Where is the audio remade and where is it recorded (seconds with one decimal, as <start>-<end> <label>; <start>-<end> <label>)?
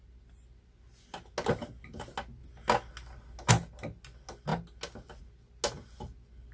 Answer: 0.0-6.5 recorded